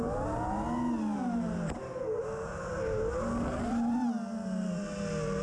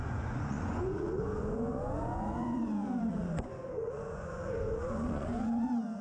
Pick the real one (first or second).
first